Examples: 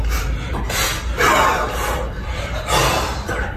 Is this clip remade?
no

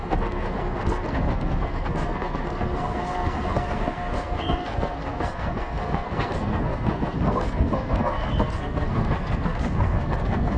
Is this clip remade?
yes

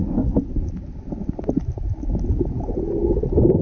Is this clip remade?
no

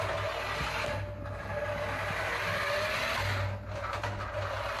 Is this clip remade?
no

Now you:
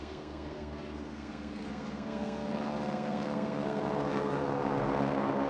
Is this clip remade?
yes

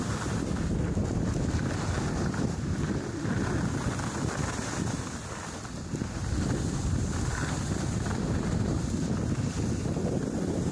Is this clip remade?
no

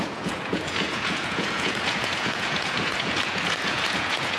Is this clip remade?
yes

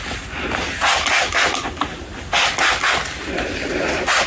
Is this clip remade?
no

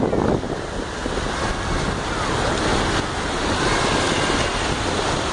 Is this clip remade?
no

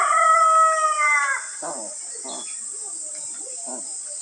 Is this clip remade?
no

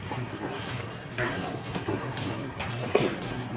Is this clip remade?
yes